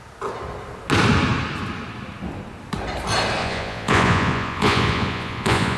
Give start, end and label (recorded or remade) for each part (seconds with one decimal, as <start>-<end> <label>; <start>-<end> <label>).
0.0-3.4 recorded; 3.4-5.8 remade